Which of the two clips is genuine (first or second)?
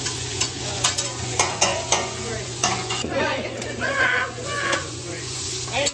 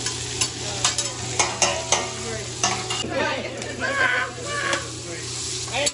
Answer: second